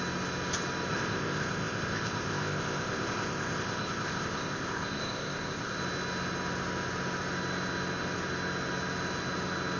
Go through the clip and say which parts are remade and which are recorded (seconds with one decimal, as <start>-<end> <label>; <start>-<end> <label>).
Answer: 0.0-0.9 recorded; 0.9-5.8 remade; 5.8-9.8 recorded